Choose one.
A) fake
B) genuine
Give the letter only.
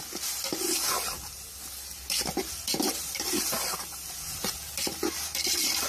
B